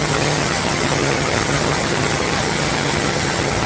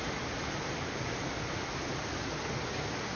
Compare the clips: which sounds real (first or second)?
second